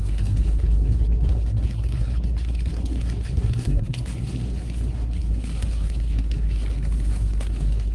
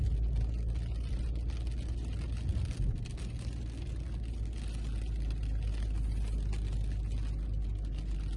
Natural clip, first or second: second